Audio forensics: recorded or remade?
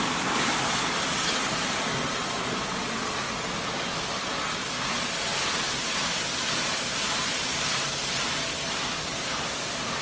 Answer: recorded